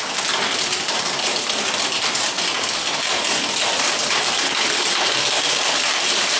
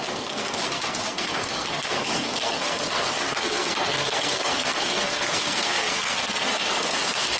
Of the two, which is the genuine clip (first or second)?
first